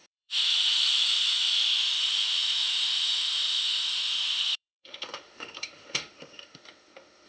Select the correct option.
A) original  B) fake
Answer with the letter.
B